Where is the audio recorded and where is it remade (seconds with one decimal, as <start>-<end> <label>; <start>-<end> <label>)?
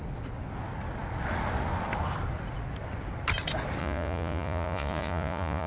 0.0-3.8 recorded; 3.8-5.7 remade